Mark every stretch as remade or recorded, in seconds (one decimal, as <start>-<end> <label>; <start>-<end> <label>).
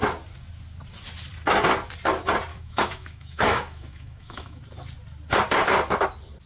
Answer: 0.0-2.5 recorded; 2.5-4.6 remade; 4.6-6.5 recorded